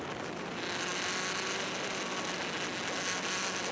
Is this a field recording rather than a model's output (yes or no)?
yes